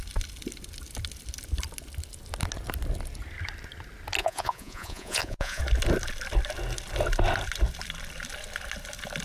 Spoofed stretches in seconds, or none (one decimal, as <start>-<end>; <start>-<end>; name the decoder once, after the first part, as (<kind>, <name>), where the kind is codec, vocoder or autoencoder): 4.2-5.6 (vocoder, Vocos)